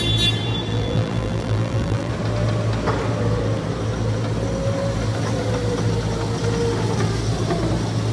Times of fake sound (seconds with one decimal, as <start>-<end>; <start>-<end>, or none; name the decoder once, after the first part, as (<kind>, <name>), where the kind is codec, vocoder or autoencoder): 0.7-2.1 (vocoder, BigVGAN v2)